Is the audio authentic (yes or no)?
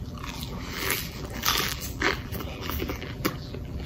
no